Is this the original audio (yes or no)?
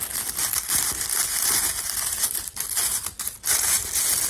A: yes